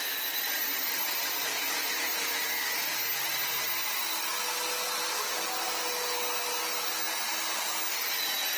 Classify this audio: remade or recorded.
recorded